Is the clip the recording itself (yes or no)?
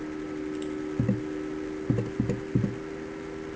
yes